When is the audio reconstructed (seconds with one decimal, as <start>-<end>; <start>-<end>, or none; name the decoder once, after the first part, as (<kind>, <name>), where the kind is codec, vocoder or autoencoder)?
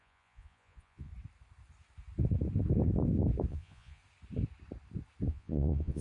0.0-1.1 (vocoder, Vocos); 3.5-4.0; 5.3-6.0